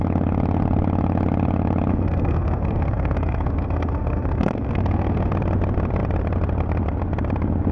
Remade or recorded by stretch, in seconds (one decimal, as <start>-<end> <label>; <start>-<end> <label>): 0.0-1.9 recorded; 1.9-5.3 remade; 5.3-7.7 recorded